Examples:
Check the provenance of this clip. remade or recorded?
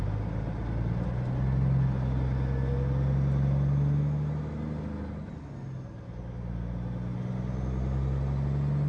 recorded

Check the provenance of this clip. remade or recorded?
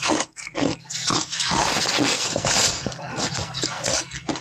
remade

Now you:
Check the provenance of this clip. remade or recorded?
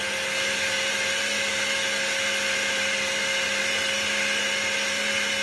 recorded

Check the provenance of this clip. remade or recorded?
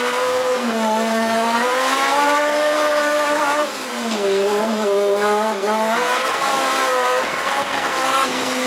remade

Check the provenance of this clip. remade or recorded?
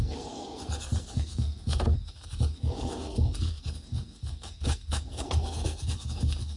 remade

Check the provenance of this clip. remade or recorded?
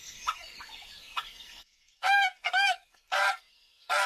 remade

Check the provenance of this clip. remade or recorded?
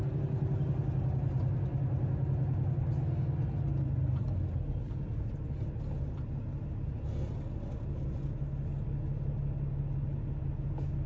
recorded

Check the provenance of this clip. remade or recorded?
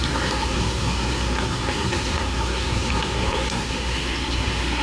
remade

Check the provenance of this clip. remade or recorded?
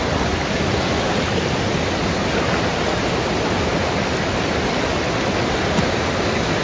recorded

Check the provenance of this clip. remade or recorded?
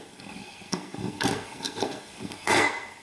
remade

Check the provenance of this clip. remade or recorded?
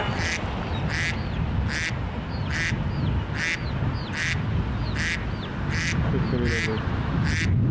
recorded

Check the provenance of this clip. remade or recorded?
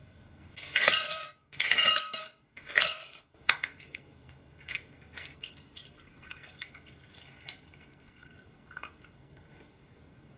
remade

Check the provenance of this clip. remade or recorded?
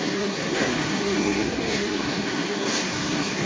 remade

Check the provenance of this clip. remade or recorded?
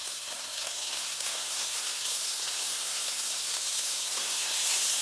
remade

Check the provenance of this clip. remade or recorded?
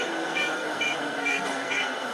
remade